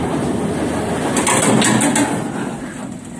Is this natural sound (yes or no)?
yes